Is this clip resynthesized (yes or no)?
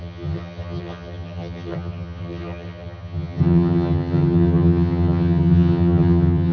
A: yes